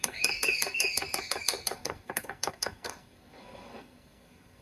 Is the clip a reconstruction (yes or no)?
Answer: yes